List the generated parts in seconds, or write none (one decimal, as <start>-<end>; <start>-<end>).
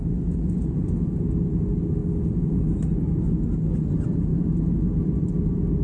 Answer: none